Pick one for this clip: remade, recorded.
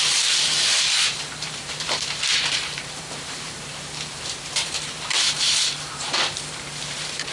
remade